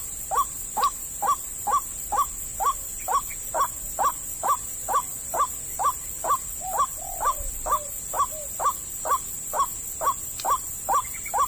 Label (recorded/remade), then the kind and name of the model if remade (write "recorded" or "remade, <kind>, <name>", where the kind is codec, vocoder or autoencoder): recorded